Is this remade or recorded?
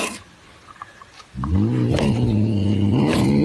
recorded